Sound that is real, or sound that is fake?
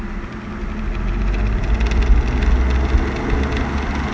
real